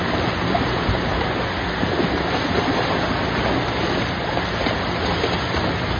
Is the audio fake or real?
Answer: real